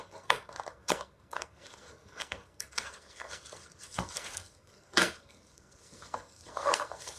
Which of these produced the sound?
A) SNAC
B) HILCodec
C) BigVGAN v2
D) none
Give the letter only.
A